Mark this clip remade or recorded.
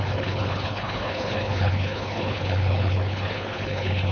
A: remade